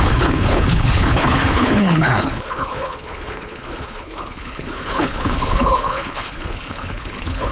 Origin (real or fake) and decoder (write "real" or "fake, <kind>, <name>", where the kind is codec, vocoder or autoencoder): fake, codec, HILCodec